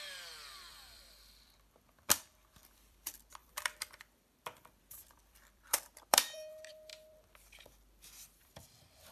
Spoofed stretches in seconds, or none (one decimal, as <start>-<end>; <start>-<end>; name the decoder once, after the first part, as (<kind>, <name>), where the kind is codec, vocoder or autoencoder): 0.0-9.1 (vocoder, BigVGAN v2)